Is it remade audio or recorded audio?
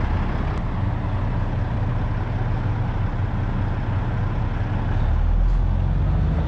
recorded